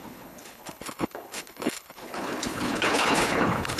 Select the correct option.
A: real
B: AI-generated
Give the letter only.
B